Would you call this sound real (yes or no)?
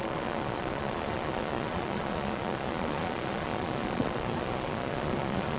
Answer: no